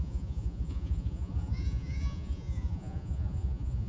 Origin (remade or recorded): remade